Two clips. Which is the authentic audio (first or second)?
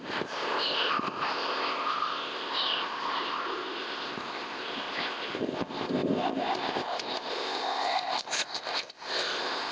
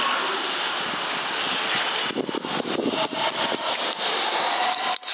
second